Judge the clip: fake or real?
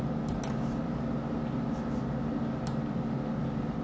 real